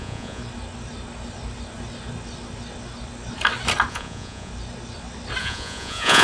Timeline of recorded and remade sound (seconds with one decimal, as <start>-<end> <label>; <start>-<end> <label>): 0.0-0.4 remade; 0.4-3.9 recorded; 3.9-4.5 remade; 4.5-5.4 recorded; 5.4-6.2 remade